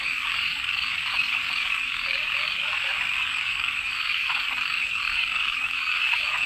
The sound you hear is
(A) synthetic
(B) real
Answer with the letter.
A